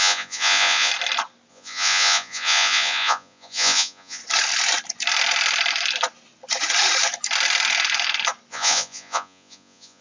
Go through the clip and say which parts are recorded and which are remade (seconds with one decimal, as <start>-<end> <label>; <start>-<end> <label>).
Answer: 0.0-0.9 remade; 0.9-1.5 recorded; 1.5-4.2 remade; 4.2-8.5 recorded; 8.5-10.0 remade